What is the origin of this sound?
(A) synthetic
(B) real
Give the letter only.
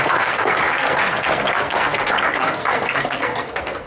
A